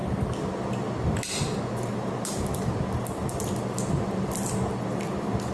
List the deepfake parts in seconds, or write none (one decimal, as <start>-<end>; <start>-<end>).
none